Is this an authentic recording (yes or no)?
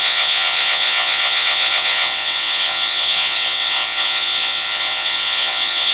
no